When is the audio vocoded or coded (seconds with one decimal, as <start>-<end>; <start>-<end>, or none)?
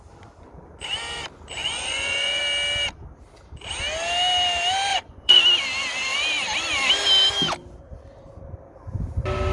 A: 1.6-2.4; 4.9-5.4